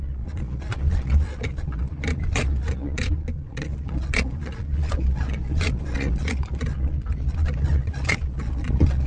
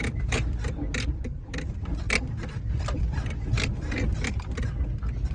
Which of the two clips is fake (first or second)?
first